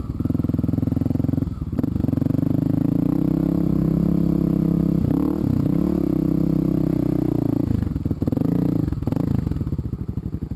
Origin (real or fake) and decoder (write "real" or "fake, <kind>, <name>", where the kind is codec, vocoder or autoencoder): real